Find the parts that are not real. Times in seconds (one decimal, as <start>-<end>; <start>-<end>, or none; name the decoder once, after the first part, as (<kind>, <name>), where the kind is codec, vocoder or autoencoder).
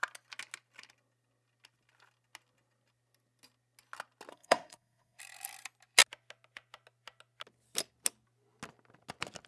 4.3-5.2 (codec, SNAC)